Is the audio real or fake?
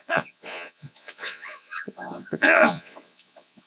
fake